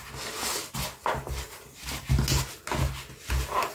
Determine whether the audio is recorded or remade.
recorded